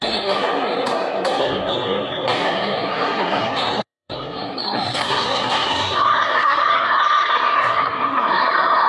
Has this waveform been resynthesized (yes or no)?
yes